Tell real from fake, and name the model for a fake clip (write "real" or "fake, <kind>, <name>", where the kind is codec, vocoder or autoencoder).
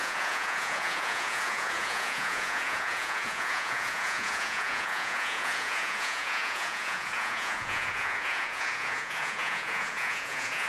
fake, vocoder, Vocos